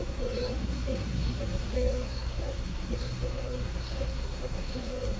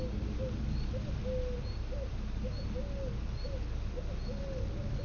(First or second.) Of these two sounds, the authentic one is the second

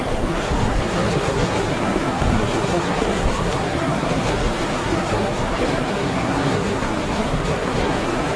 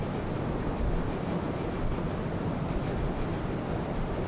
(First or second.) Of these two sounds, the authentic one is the second